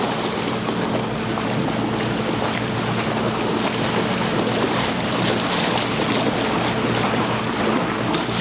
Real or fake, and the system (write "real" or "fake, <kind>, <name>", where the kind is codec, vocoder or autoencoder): real